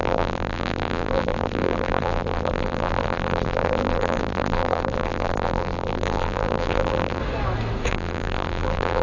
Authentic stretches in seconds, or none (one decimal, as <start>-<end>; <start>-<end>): 7.2-7.9